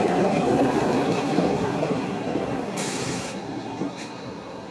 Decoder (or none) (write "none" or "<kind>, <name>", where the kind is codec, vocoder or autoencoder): codec, SNAC